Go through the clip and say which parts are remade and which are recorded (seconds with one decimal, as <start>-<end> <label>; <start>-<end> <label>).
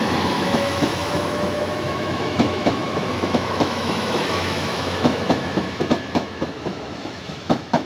0.0-7.9 remade